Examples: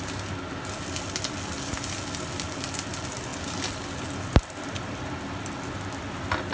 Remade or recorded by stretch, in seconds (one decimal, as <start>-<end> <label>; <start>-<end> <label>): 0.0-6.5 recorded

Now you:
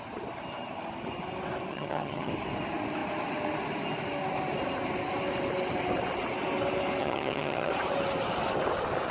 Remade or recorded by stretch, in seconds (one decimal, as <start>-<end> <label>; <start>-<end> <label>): 0.0-1.7 recorded; 1.7-2.3 remade; 2.3-7.0 recorded; 7.0-7.7 remade; 7.7-9.1 recorded

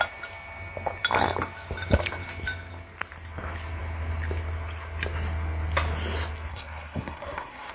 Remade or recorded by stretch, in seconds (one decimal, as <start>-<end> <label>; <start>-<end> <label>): 0.0-6.5 recorded; 6.5-7.7 remade

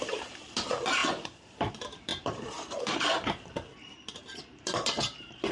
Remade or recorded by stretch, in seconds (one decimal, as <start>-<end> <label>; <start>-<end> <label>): 0.0-5.5 remade